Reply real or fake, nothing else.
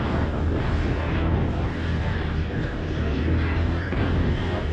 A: fake